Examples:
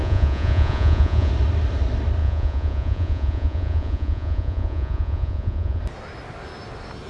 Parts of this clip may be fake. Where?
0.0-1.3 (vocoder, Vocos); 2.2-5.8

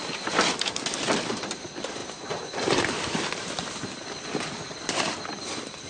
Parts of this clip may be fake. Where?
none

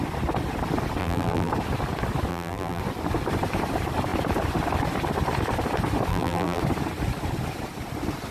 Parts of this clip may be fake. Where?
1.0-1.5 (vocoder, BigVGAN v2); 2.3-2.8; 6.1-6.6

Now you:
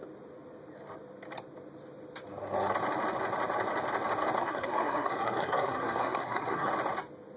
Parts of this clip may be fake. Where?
4.4-6.7 (codec, SNAC)